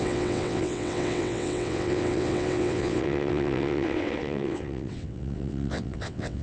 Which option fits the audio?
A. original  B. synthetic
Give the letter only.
B